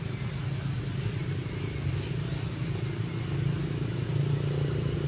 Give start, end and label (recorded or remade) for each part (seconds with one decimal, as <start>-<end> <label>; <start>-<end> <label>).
0.0-5.1 recorded